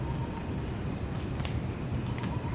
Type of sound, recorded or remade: recorded